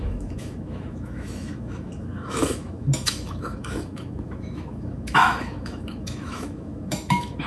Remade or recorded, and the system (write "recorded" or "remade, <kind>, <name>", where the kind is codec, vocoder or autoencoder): remade, autoencoder, DAC-VAE